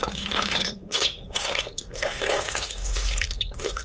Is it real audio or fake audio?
fake